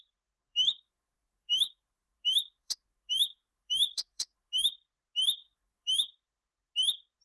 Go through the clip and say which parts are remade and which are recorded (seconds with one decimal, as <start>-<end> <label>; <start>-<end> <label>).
0.0-0.4 recorded; 0.4-4.7 remade; 4.7-5.4 recorded; 5.4-6.1 remade; 6.1-7.2 recorded